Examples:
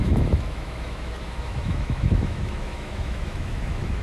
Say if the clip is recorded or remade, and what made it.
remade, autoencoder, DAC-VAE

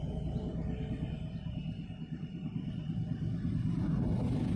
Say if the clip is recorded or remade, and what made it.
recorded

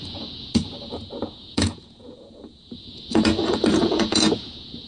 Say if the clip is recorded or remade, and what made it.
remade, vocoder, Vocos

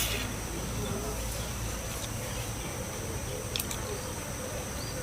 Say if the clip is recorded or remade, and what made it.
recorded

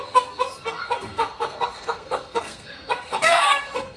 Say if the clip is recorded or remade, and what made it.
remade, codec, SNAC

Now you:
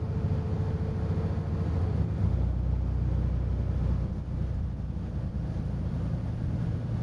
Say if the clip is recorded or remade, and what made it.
recorded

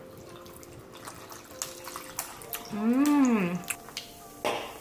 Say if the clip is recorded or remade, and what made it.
recorded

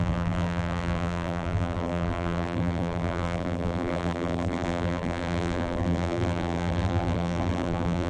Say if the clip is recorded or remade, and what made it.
remade, vocoder, BigVGAN v2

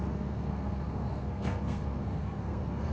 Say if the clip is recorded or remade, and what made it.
remade, codec, SNAC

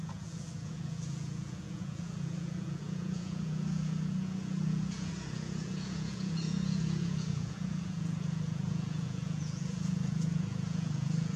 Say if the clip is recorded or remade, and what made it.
remade, vocoder, Vocos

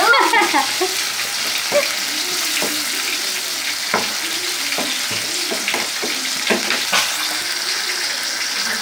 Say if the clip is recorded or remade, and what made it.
recorded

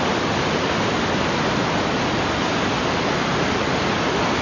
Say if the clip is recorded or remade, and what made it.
recorded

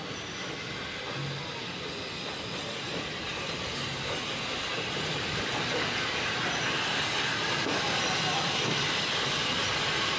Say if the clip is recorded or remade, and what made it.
recorded